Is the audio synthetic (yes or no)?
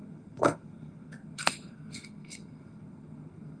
yes